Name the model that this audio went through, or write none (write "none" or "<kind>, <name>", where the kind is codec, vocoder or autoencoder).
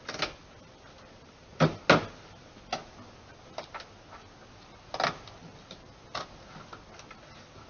none